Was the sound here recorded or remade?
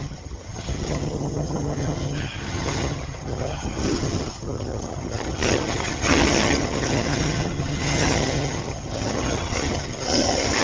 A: remade